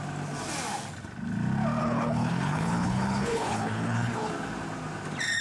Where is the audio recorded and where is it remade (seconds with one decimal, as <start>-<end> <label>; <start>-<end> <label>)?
0.0-1.8 recorded; 1.8-4.3 remade; 4.3-5.4 recorded